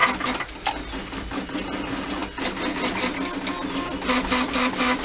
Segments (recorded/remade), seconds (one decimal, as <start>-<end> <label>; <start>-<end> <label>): 0.0-5.0 recorded